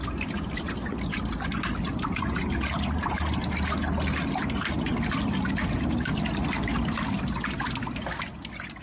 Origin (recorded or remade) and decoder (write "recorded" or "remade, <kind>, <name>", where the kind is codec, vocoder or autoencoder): recorded